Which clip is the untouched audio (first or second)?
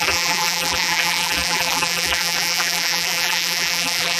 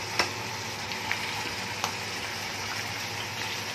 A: second